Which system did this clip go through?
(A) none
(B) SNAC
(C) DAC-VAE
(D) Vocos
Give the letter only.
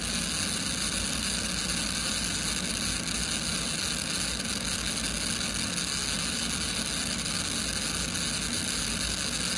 A